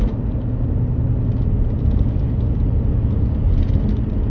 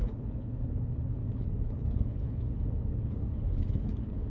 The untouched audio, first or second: first